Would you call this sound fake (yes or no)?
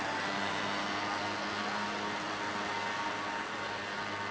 no